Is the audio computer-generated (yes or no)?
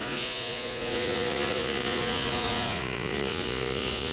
yes